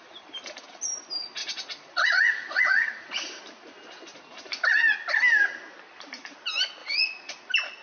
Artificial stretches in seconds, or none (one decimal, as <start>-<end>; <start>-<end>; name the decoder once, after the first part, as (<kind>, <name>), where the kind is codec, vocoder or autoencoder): 1.4-3.4 (vocoder, Vocos); 6.8-7.3